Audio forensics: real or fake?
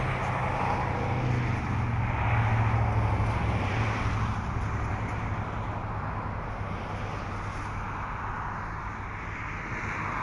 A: real